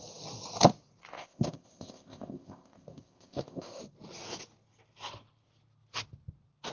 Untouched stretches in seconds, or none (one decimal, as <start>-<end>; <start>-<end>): 0.0-1.1; 3.8-6.7